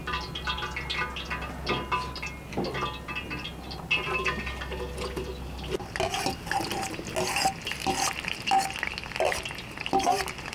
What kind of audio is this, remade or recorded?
recorded